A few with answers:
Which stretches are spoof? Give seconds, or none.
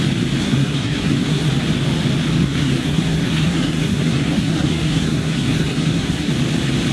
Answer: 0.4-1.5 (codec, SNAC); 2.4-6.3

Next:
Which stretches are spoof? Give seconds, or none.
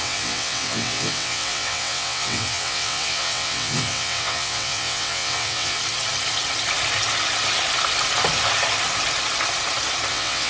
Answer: 0.0-5.8 (vocoder, WaveNeXt); 10.1-10.5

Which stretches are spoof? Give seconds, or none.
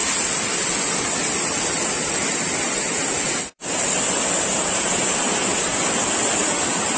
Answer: none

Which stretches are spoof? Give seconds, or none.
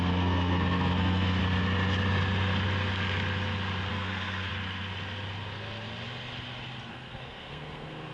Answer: 0.0-1.4 (codec, SNAC); 3.9-4.5; 6.9-8.1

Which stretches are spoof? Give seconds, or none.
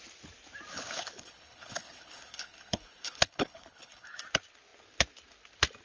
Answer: 0.7-4.2 (codec, HILCodec)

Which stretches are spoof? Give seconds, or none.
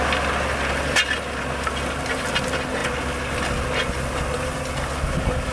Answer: none